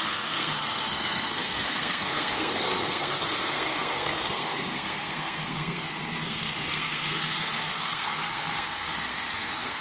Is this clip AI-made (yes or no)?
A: yes